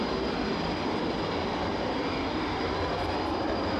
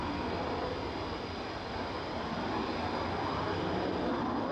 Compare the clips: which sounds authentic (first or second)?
second